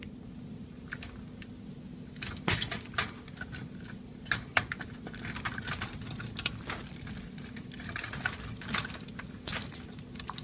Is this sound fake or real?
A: real